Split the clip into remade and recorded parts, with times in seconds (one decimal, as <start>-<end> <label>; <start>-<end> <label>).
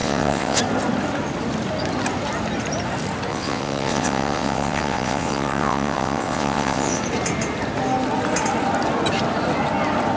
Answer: 0.0-0.6 remade; 0.6-3.3 recorded; 3.3-7.0 remade; 7.0-10.2 recorded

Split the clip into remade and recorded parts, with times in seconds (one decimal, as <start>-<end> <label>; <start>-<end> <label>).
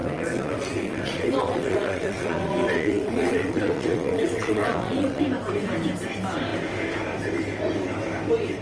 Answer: 0.0-5.2 remade; 5.2-8.6 recorded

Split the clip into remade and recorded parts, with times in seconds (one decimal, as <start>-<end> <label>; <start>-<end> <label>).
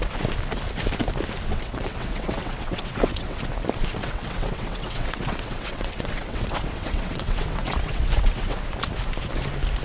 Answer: 0.0-1.5 recorded; 1.5-3.4 remade; 3.4-4.0 recorded; 4.0-8.6 remade; 8.6-9.8 recorded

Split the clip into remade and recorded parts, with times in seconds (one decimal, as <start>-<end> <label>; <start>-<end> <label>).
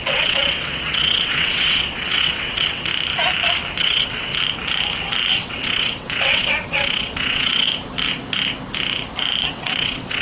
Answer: 0.0-2.9 remade; 2.9-3.8 recorded; 3.8-4.3 remade; 4.3-5.3 recorded; 5.3-7.7 remade; 7.7-9.5 recorded; 9.5-10.2 remade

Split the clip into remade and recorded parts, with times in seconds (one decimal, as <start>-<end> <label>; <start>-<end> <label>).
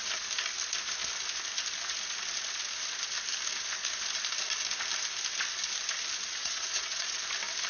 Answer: 0.0-6.4 recorded; 6.4-7.2 remade; 7.2-7.7 recorded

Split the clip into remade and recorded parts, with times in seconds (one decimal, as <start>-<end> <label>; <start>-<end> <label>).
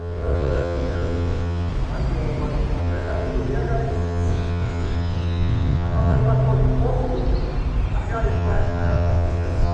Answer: 0.0-1.7 remade; 1.7-2.8 recorded; 2.8-3.3 remade; 3.3-3.9 recorded; 3.9-6.2 remade; 6.2-8.3 recorded; 8.3-9.7 remade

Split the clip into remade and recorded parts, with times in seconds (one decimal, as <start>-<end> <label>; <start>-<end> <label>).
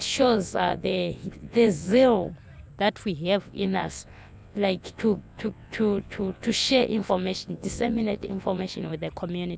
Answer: 0.0-2.3 remade; 2.3-3.4 recorded; 3.4-8.9 remade; 8.9-9.6 recorded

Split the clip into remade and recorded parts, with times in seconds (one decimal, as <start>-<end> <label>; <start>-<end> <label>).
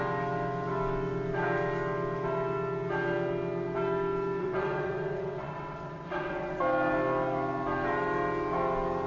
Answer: 0.0-4.4 recorded; 4.4-6.6 remade; 6.6-9.1 recorded